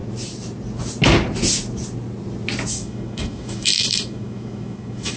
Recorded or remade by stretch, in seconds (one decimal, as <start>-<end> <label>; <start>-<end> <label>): 0.0-2.7 recorded; 2.7-5.2 remade